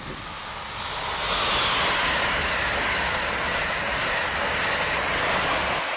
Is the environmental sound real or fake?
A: real